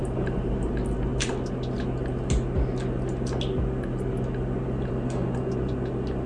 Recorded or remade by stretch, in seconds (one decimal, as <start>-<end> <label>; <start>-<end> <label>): 0.0-0.7 remade; 0.7-6.3 recorded